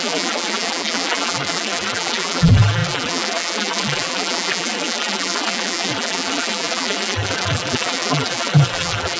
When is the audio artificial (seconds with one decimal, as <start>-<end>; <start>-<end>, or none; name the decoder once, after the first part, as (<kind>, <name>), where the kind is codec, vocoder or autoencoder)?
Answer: 0.0-9.2 (vocoder, BigVGAN v2)